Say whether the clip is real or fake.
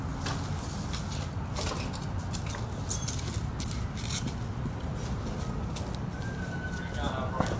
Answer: real